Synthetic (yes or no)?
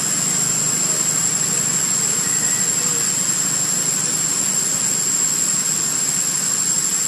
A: no